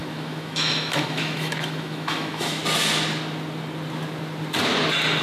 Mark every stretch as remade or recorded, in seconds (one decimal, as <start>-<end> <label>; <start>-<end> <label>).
0.0-2.6 remade; 2.6-5.2 recorded